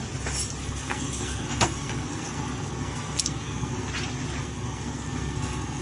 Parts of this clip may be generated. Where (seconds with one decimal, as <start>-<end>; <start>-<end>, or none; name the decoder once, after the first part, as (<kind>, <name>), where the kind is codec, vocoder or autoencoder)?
0.6-3.9 (codec, SNAC); 4.4-5.8